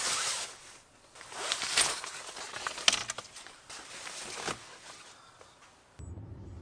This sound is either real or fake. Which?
real